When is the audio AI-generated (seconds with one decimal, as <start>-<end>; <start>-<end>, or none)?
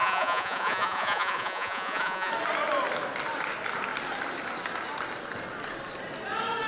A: 0.0-2.3